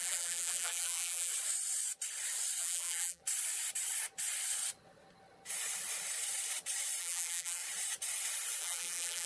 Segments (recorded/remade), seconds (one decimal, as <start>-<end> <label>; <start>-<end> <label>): 0.0-1.3 remade; 1.3-2.6 recorded; 2.6-3.2 remade; 3.2-7.0 recorded; 7.0-7.6 remade; 7.6-8.6 recorded; 8.6-9.3 remade